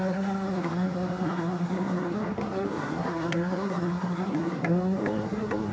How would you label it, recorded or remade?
remade